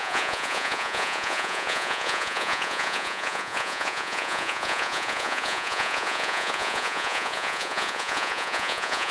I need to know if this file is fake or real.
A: fake